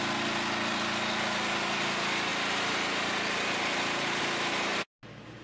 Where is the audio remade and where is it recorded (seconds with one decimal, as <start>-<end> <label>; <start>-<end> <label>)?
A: 0.0-5.4 recorded